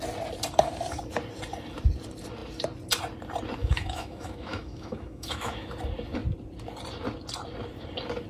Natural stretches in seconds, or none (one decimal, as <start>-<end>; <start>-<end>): 0.0-3.6; 5.7-8.3